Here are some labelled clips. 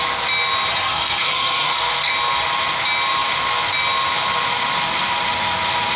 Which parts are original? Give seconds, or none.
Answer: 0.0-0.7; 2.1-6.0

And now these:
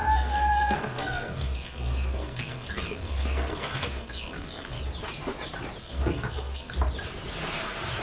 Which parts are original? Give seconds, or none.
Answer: 4.8-5.8; 6.7-8.0

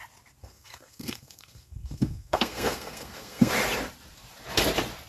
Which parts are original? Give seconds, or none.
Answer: 0.0-0.4; 3.5-5.1

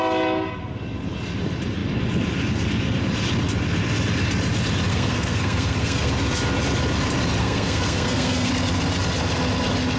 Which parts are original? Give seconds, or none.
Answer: 0.0-4.9; 6.1-7.4; 8.5-10.0